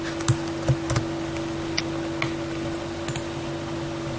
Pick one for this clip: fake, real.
real